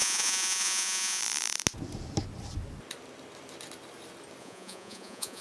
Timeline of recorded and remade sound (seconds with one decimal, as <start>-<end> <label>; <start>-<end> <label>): 0.0-1.2 remade; 1.2-4.4 recorded; 4.4-5.4 remade